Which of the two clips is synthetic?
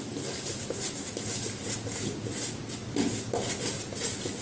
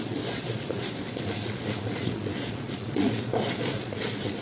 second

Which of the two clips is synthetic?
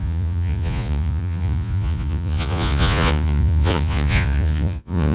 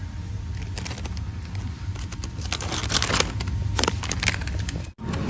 first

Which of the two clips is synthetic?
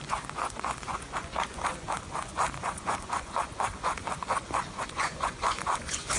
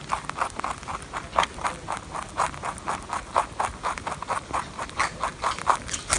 first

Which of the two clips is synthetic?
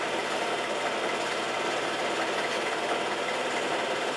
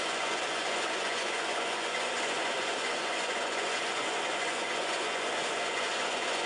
second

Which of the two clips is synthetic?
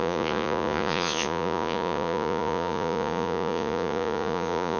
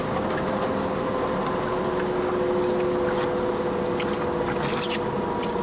first